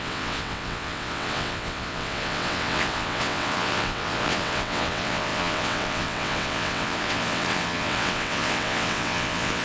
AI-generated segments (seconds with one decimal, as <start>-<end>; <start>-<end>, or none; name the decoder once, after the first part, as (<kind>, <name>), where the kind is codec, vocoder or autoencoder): 0.0-9.6 (vocoder, WaveNeXt)